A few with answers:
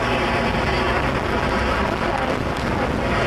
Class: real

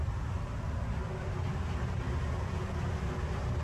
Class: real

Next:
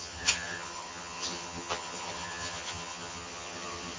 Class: fake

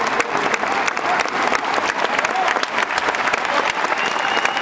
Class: real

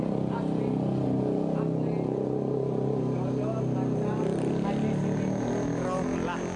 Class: real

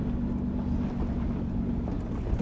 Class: real